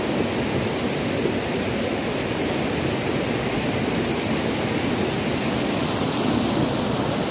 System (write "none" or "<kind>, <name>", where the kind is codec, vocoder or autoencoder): none